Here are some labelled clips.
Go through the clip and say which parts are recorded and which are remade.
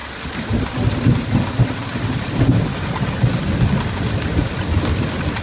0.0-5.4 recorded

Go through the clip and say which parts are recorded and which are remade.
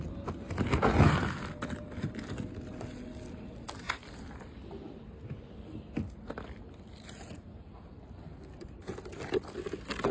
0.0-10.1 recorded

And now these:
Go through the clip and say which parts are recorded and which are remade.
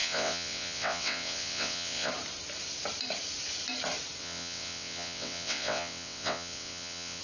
0.0-2.1 remade; 2.1-4.2 recorded; 4.2-7.2 remade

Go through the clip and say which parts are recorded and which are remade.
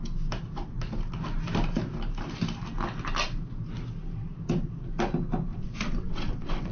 0.0-5.5 recorded; 5.5-6.7 remade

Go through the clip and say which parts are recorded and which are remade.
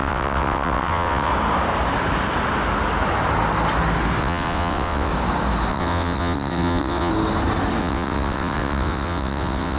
0.0-1.3 remade; 1.3-4.2 recorded; 4.2-5.1 remade; 5.1-5.7 recorded; 5.7-7.1 remade; 7.1-7.8 recorded; 7.8-9.8 remade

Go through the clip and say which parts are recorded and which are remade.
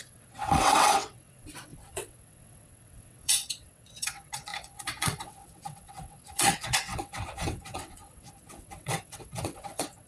0.0-10.1 remade